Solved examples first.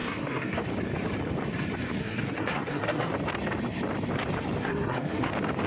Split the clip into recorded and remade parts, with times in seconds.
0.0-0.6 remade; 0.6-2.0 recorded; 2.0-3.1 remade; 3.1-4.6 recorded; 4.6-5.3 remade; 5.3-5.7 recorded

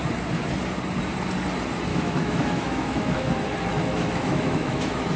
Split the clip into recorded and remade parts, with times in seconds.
0.0-1.9 recorded; 1.9-3.3 remade; 3.3-3.7 recorded; 3.7-5.2 remade

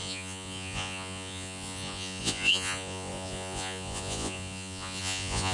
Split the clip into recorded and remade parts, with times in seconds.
0.0-5.5 remade

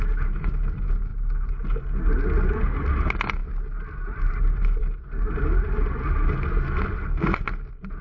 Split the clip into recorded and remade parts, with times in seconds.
0.0-8.0 recorded

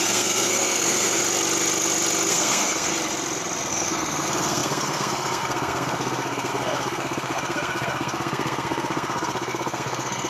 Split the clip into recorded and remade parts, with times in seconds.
0.0-1.2 remade; 1.2-2.3 recorded; 2.3-2.9 remade; 2.9-3.7 recorded; 3.7-10.3 remade

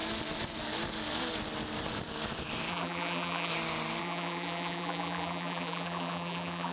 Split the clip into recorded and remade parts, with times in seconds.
0.0-2.7 recorded; 2.7-3.5 remade; 3.5-4.0 recorded; 4.0-6.7 remade